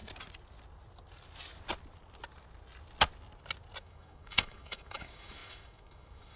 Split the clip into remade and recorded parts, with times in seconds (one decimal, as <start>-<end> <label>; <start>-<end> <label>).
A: 0.0-3.8 recorded; 3.8-6.4 remade